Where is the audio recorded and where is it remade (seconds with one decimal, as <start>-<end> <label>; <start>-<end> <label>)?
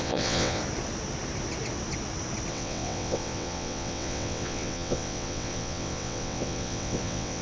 0.0-0.6 remade; 0.6-2.5 recorded; 2.5-7.4 remade